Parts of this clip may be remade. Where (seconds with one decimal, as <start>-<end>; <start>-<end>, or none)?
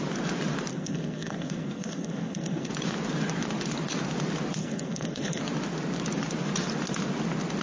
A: 0.7-2.7; 4.6-5.4